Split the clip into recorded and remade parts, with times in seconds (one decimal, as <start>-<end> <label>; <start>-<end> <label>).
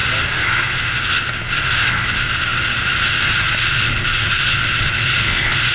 0.0-5.7 recorded